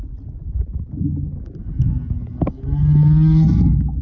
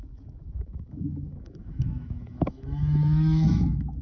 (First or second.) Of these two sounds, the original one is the first